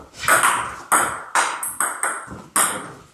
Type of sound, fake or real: real